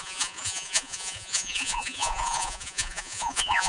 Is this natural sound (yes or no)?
no